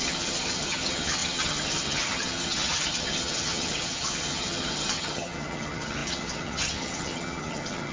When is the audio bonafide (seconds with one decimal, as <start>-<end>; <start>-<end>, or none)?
none

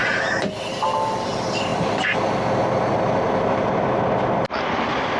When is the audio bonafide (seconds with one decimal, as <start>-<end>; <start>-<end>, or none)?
0.0-5.2

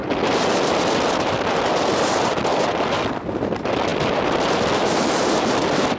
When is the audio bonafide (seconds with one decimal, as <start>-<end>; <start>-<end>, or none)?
0.0-6.0

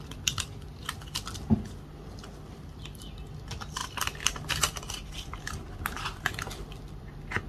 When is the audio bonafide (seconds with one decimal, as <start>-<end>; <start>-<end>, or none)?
0.0-7.5